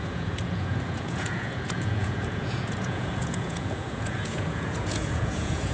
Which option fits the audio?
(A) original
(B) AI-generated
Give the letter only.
B